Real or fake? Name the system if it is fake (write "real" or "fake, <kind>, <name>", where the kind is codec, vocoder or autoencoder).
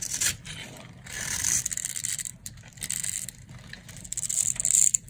fake, vocoder, BigVGAN v2